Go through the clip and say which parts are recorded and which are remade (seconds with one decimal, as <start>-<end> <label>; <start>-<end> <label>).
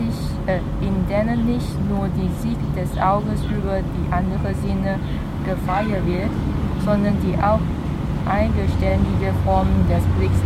0.0-5.1 recorded; 5.1-7.1 remade; 7.1-8.9 recorded; 8.9-10.0 remade; 10.0-10.5 recorded